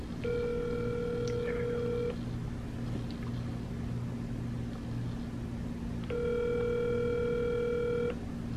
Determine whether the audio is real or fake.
real